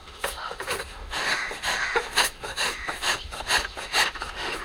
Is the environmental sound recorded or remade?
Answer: remade